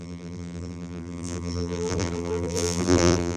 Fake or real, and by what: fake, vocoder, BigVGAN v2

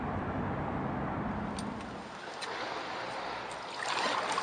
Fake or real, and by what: real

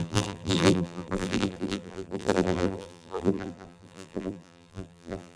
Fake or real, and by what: fake, vocoder, BigVGAN v2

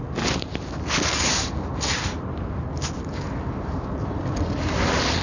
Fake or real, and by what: real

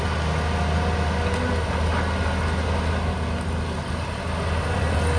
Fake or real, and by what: real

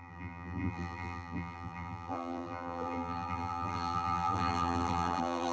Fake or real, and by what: fake, vocoder, BigVGAN v2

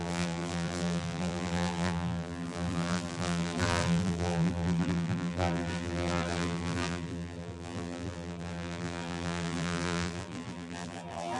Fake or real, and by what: fake, vocoder, BigVGAN v2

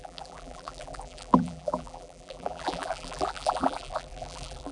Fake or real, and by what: fake, vocoder, BigVGAN v2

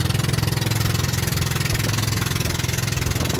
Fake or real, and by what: real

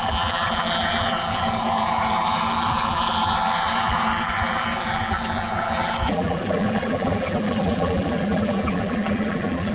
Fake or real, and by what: fake, vocoder, BigVGAN v2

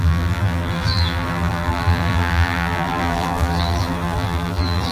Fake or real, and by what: fake, vocoder, BigVGAN v2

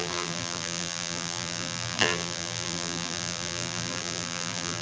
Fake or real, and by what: fake, vocoder, BigVGAN v2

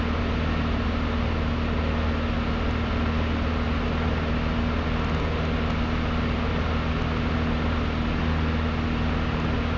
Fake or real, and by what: real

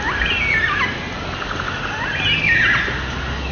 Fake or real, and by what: real